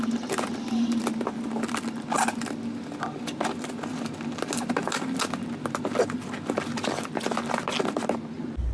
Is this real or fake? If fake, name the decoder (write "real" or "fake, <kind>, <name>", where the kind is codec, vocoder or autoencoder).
real